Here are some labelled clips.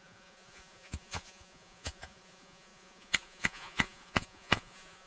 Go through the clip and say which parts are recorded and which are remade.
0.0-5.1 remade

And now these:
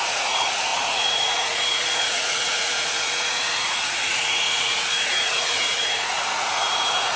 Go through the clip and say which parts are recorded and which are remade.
0.0-7.2 remade

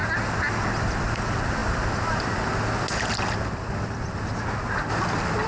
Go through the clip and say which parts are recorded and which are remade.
0.0-5.5 recorded

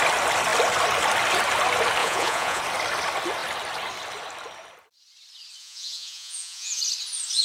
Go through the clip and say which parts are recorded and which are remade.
0.0-2.0 recorded; 2.0-2.6 remade; 2.6-5.6 recorded; 5.6-6.8 remade; 6.8-7.4 recorded